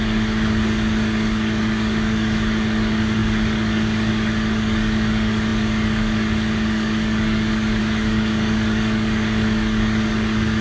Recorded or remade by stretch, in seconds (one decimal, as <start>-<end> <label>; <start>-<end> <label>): 0.0-10.6 remade